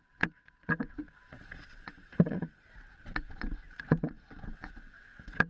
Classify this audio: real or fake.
fake